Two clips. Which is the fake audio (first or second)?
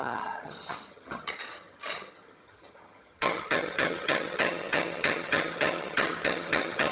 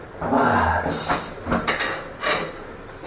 first